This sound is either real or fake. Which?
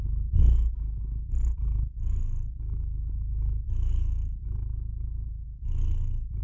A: real